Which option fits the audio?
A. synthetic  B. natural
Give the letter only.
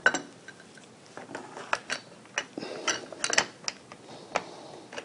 B